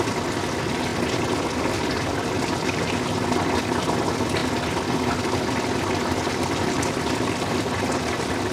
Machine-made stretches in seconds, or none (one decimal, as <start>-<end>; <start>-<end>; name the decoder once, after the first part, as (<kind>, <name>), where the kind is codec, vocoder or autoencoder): none